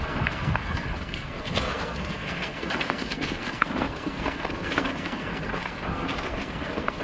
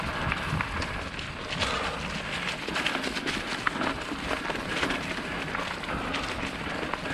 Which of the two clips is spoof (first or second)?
first